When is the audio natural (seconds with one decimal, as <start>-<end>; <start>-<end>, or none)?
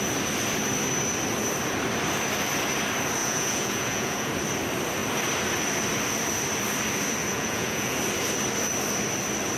0.0-3.2; 4.3-7.3; 8.0-9.6